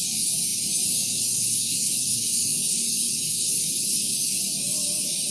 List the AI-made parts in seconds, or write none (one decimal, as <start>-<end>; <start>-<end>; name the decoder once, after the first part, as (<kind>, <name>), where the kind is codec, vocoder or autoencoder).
0.0-5.3 (codec, DAC)

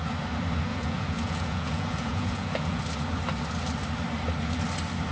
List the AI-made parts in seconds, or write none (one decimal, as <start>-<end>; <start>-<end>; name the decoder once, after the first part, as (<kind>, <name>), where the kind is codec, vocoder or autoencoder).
0.7-2.8 (vocoder, Vocos)

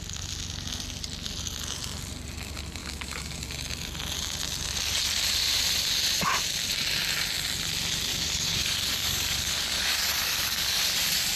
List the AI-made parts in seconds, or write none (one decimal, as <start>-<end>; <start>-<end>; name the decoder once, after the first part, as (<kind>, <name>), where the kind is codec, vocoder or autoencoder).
2.8-3.4 (codec, DAC); 8.1-10.8

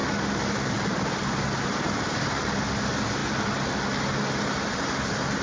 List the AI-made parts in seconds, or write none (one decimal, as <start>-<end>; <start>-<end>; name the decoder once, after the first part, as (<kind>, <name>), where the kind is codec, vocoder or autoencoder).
none

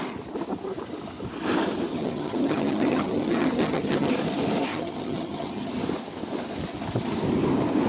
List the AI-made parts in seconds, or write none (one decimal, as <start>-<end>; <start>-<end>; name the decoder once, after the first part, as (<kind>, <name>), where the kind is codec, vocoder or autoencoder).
1.9-4.1 (vocoder, HiFi-GAN); 4.7-5.7

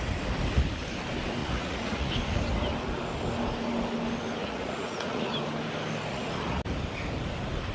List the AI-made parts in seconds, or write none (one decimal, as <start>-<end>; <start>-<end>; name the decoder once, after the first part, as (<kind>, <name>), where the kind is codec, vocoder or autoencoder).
1.4-2.1 (vocoder, Vocos); 4.4-5.3; 6.1-6.6

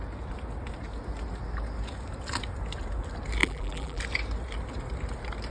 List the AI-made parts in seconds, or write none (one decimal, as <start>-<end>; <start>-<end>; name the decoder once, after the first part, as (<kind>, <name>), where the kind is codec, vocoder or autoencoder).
3.4-4.0 (vocoder, BigVGAN v2)

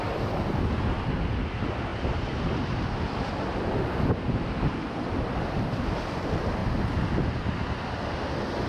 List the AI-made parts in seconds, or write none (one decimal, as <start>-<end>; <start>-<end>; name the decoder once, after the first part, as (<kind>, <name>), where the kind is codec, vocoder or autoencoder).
none